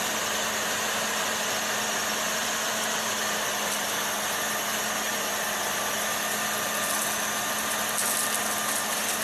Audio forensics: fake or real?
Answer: real